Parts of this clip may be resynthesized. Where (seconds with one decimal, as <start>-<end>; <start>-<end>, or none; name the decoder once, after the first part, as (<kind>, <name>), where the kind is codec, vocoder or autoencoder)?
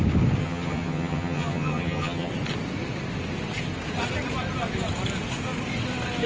0.4-2.3 (vocoder, HiFi-GAN)